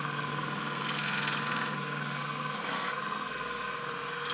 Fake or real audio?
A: fake